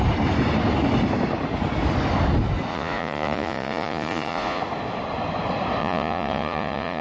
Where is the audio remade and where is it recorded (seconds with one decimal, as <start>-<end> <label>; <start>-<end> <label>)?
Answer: 0.0-2.7 recorded; 2.7-4.6 remade; 4.6-5.8 recorded; 5.8-7.0 remade